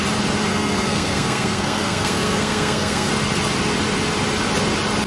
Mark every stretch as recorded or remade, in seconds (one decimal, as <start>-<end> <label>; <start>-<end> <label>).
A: 0.0-0.5 recorded; 0.5-3.1 remade; 3.1-5.1 recorded